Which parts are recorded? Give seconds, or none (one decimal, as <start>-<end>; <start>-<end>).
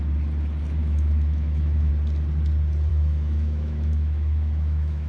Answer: 0.0-0.8; 1.9-2.9